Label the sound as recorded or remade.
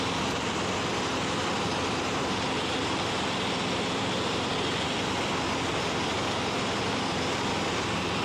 remade